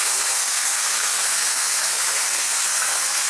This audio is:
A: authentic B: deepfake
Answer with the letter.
B